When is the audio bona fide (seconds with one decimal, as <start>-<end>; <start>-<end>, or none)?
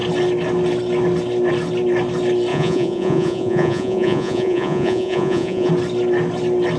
0.0-2.5; 5.7-6.8